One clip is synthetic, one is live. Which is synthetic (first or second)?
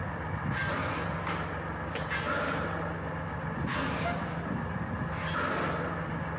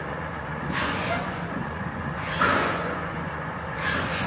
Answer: second